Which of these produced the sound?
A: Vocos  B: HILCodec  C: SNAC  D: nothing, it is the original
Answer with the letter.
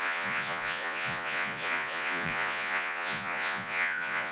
A